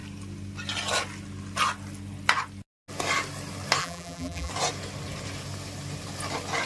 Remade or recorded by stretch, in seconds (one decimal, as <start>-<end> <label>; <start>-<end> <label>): 0.0-3.8 recorded; 3.8-4.5 remade; 4.5-6.7 recorded